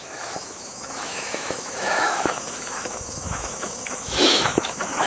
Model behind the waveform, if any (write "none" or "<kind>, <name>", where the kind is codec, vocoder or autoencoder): autoencoder, DAC-VAE